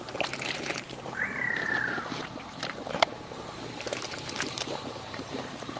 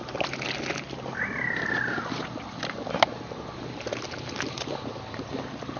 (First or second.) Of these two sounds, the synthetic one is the first